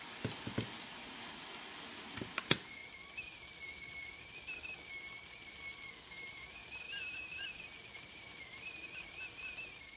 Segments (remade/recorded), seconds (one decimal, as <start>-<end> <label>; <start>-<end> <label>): 0.0-10.0 recorded